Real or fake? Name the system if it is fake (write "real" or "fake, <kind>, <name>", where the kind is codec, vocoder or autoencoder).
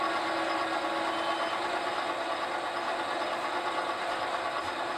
real